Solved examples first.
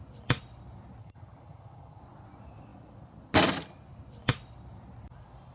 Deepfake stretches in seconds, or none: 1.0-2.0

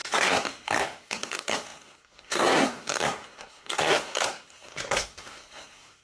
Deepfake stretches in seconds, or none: 0.0-6.0

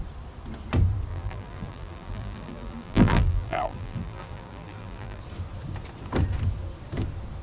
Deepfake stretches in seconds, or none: 1.1-5.2

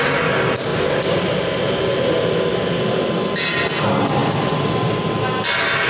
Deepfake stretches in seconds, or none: none

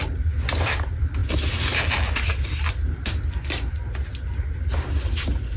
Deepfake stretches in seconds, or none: none

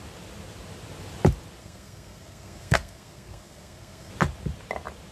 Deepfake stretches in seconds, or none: 1.6-4.1

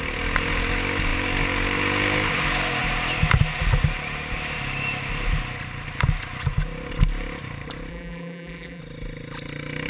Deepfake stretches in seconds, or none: 7.9-8.8